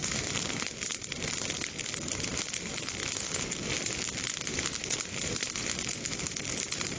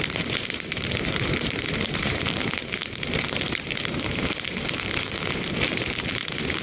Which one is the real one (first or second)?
first